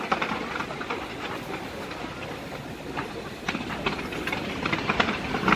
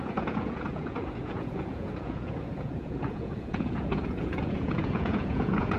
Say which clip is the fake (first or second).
second